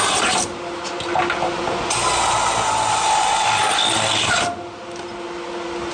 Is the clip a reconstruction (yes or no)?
no